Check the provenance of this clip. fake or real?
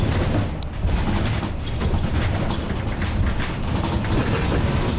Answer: real